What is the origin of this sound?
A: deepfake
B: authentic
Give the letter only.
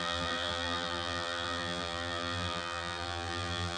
A